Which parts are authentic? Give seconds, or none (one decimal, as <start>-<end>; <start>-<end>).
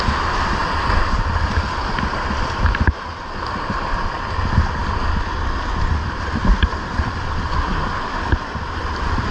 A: 0.0-9.3